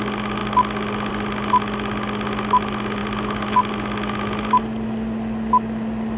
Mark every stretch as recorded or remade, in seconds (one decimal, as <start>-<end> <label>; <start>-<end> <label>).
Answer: 0.0-6.2 recorded